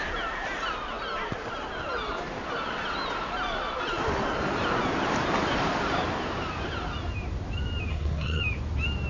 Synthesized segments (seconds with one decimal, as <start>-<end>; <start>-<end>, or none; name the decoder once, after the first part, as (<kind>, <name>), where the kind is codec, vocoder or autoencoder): 7.9-8.4 (codec, SNAC)